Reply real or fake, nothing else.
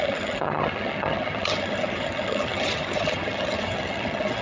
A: fake